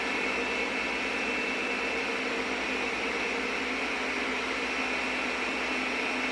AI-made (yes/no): no